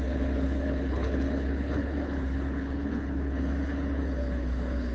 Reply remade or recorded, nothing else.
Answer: remade